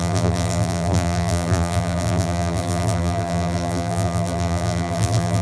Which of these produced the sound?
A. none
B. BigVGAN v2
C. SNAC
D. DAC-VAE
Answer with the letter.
B